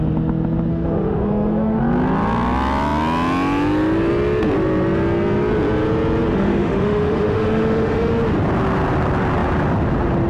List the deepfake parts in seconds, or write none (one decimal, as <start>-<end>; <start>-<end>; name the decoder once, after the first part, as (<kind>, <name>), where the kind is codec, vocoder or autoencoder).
0.7-1.8 (autoencoder, DAC-VAE); 6.3-8.1